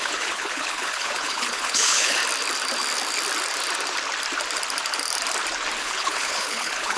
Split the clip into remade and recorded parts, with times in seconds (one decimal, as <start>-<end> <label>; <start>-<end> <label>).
0.0-2.2 remade; 2.2-5.8 recorded; 5.8-7.0 remade